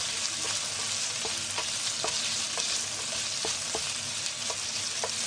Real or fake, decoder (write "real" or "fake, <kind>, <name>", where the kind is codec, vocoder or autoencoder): real